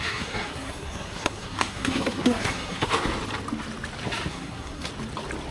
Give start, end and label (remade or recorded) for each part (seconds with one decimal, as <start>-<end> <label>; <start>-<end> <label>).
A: 0.0-2.9 remade; 2.9-4.3 recorded; 4.3-4.9 remade; 4.9-5.5 recorded

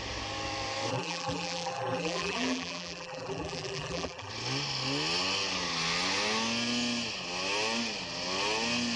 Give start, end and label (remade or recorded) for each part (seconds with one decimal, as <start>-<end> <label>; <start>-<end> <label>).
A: 0.0-0.9 recorded; 0.9-4.3 remade; 4.3-9.0 recorded

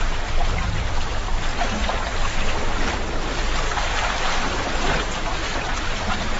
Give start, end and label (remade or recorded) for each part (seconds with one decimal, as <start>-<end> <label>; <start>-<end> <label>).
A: 0.0-6.4 recorded